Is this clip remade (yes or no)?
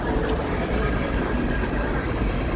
no